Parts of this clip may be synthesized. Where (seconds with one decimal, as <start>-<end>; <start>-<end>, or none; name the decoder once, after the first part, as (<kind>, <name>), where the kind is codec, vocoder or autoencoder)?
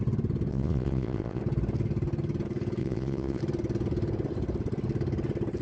0.5-1.4 (vocoder, Vocos); 2.8-3.4